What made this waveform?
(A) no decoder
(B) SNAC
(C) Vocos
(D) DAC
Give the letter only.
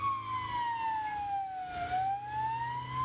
A